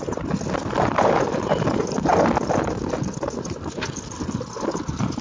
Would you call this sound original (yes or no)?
yes